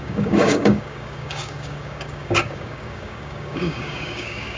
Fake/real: fake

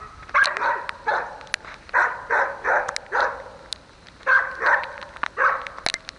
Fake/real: real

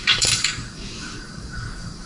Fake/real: fake